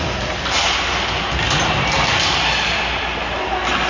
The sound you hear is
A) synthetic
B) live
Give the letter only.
B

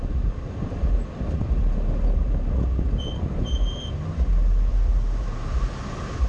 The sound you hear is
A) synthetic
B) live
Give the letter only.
B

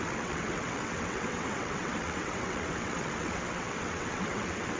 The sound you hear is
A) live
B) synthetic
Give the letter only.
B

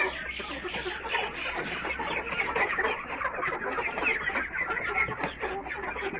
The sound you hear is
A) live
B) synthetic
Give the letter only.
A